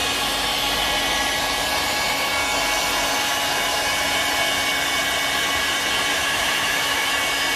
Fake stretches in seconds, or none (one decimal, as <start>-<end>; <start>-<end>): 6.1-7.1